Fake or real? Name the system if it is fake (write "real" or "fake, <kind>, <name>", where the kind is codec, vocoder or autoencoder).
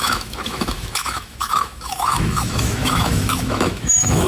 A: fake, autoencoder, DAC-VAE